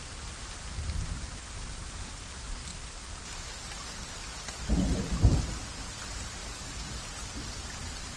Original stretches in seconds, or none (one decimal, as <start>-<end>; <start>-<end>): 0.0-8.2